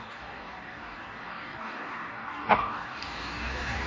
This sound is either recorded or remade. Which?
remade